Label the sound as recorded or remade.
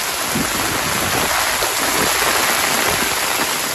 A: recorded